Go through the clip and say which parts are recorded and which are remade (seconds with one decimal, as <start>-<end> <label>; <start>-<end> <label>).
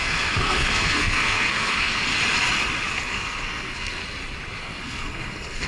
0.0-2.1 remade; 2.1-2.9 recorded; 2.9-4.0 remade; 4.0-4.6 recorded; 4.6-5.7 remade